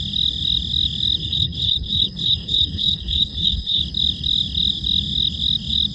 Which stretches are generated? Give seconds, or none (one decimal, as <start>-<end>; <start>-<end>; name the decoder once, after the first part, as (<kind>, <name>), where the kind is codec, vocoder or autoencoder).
1.2-3.8 (codec, HILCodec)